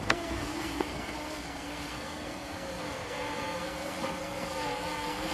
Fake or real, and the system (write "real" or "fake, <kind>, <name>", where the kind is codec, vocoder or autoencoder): fake, codec, SNAC